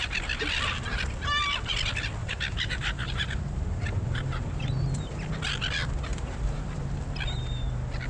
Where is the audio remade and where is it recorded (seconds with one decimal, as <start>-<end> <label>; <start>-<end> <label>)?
0.0-2.2 recorded; 2.2-4.9 remade; 4.9-6.1 recorded; 6.1-6.9 remade; 6.9-8.1 recorded

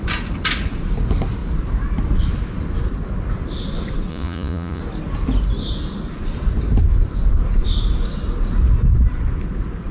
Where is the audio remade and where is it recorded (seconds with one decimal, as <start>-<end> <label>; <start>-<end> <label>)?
0.0-4.1 recorded; 4.1-4.8 remade; 4.8-9.9 recorded

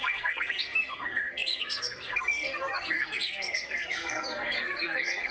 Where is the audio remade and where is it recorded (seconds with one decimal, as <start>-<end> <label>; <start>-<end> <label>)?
0.0-5.3 remade

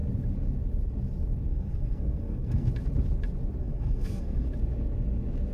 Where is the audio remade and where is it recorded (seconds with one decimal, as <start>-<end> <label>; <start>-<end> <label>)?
0.0-1.5 recorded; 1.5-2.7 remade; 2.7-3.6 recorded; 3.6-4.5 remade; 4.5-5.5 recorded